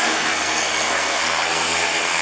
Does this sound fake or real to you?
fake